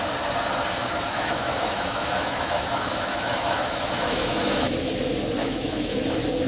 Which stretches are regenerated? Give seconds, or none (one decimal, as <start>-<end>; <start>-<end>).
0.8-4.7; 5.4-6.0

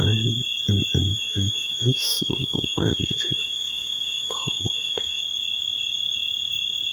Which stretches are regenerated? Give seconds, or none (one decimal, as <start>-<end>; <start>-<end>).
1.1-5.2

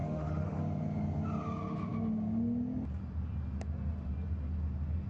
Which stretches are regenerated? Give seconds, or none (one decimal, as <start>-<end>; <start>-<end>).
0.0-0.6

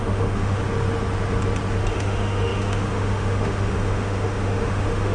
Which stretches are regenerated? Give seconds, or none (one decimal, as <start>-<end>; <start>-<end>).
0.0-0.6; 1.9-5.1

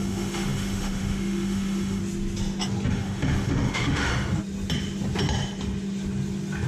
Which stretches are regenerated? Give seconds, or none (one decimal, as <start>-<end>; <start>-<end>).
0.0-2.0; 2.9-4.1

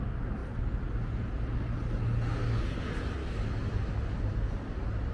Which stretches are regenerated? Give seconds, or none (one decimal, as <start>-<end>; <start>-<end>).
3.2-3.7

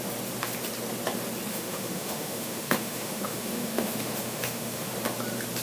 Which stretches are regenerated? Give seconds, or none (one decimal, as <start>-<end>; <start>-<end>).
1.5-4.9